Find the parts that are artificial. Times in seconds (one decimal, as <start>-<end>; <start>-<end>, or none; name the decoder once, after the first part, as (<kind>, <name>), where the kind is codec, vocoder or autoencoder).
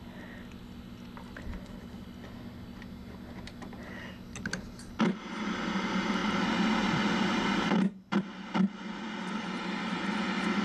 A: none